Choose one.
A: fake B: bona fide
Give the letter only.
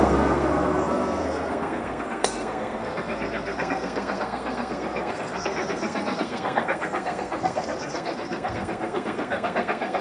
A